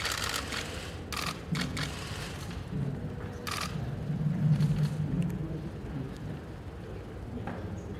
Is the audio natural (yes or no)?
yes